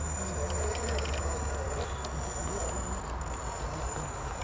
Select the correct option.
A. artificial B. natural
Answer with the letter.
B